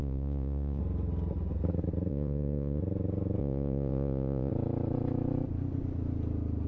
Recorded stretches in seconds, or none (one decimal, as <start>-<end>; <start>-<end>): 0.8-2.1; 2.8-3.4; 4.5-6.7